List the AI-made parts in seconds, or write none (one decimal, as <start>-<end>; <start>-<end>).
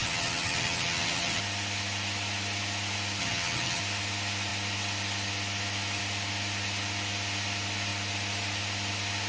0.0-1.4; 3.2-3.8